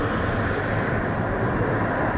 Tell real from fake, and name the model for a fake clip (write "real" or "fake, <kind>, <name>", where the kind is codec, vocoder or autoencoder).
real